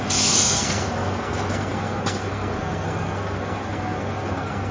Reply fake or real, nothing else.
fake